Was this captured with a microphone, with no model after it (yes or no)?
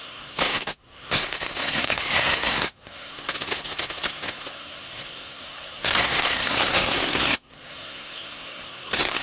no